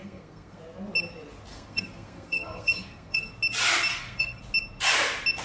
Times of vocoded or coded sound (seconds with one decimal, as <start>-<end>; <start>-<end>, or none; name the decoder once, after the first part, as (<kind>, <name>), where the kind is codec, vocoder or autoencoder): 0.0-0.6 (codec, SNAC); 1.5-3.3; 3.9-4.4